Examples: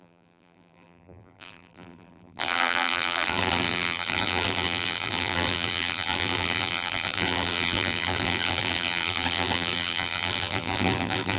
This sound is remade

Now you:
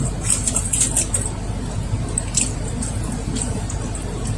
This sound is recorded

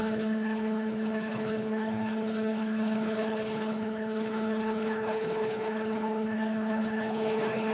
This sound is remade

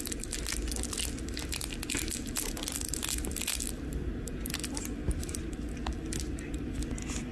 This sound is recorded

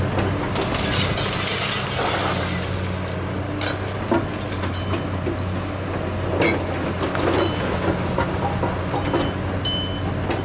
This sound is recorded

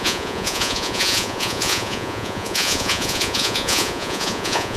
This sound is remade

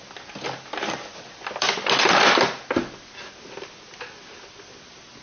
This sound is recorded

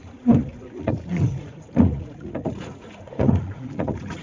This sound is remade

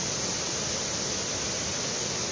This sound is recorded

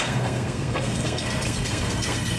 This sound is remade